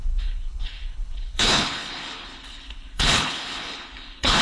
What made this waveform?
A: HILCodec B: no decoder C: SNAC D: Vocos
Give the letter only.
A